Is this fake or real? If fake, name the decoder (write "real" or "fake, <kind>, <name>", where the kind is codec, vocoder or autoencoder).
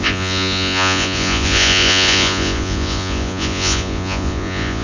fake, vocoder, Vocos